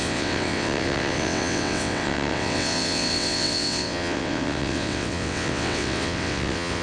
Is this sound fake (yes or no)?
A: yes